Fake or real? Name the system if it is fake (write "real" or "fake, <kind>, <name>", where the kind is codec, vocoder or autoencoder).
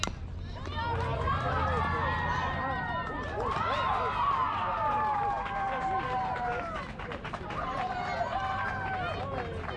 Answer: real